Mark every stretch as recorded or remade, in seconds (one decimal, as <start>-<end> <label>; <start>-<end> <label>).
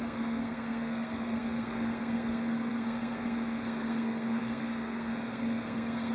0.0-6.1 remade